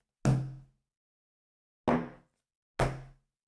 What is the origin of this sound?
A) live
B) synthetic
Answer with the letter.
A